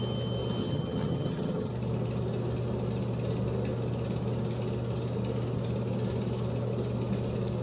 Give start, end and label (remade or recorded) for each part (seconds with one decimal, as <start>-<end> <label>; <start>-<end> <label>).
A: 0.0-0.6 recorded; 0.6-1.7 remade; 1.7-7.6 recorded